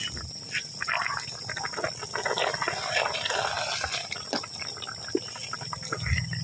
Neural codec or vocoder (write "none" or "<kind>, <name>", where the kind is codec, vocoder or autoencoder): none